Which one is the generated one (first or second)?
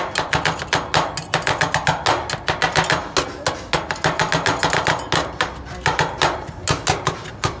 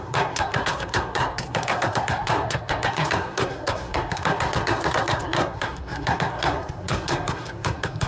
second